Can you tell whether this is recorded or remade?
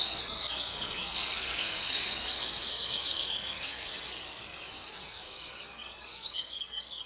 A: remade